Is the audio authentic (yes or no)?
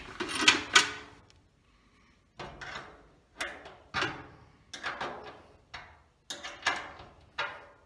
yes